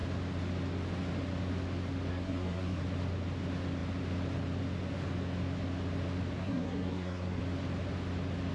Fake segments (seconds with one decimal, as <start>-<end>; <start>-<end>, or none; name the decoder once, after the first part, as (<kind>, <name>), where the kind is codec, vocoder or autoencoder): 2.1-2.8 (codec, SNAC); 6.4-7.4